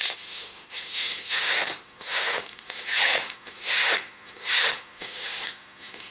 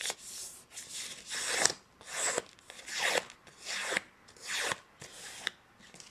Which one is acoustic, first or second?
second